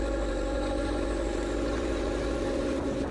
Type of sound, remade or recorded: remade